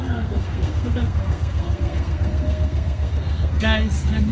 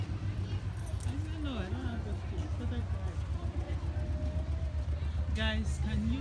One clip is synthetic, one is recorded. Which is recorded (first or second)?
second